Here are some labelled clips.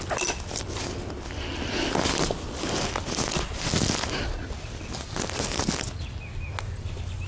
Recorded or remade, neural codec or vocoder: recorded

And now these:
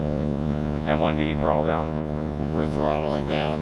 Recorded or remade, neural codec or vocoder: remade, vocoder, Vocos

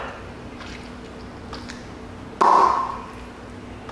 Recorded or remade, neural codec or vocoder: recorded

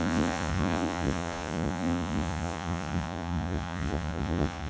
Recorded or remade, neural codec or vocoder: remade, vocoder, Vocos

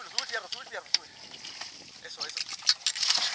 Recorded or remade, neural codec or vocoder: recorded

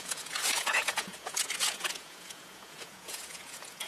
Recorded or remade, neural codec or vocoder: remade, vocoder, Vocos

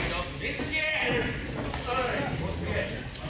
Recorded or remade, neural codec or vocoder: recorded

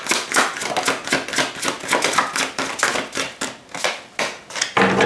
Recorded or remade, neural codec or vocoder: recorded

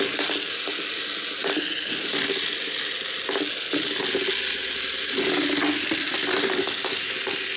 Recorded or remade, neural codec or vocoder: recorded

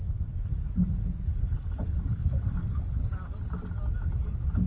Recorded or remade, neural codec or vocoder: recorded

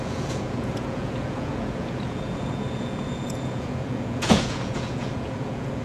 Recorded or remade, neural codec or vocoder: remade, vocoder, Vocos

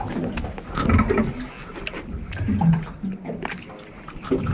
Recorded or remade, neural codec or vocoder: recorded